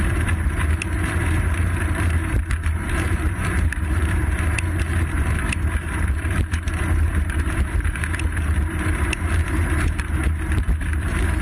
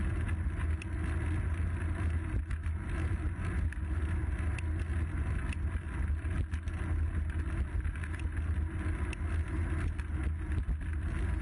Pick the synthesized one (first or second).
first